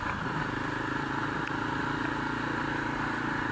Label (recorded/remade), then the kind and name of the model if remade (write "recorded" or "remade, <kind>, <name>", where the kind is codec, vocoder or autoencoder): recorded